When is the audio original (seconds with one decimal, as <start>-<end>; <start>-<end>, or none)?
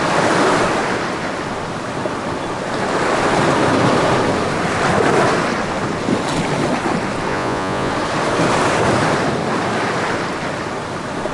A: 0.0-7.3; 7.9-11.3